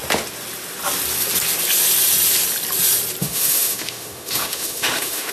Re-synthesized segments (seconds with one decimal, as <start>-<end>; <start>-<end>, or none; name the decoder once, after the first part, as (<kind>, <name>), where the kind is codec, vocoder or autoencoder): 3.2-5.3 (autoencoder, DAC-VAE)